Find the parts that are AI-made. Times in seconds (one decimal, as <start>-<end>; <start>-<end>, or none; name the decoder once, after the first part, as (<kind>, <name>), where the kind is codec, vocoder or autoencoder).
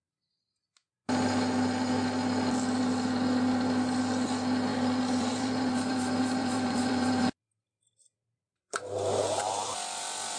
4.7-8.8 (vocoder, BigVGAN v2); 9.4-10.4